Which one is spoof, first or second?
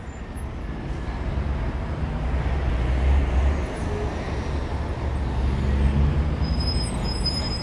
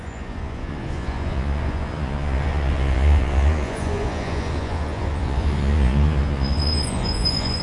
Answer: second